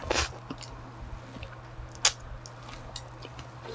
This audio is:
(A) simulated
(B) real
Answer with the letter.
B